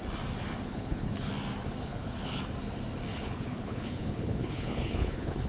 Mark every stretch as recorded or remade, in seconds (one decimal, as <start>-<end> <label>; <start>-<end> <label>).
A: 0.0-0.7 recorded; 0.7-1.3 remade; 1.3-1.8 recorded; 1.8-2.4 remade; 2.4-3.1 recorded; 3.1-5.5 remade